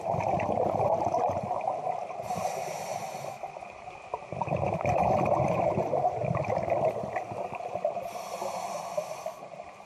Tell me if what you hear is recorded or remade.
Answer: recorded